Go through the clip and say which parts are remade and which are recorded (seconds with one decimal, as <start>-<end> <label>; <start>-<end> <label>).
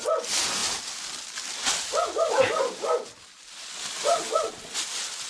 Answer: 0.0-5.3 recorded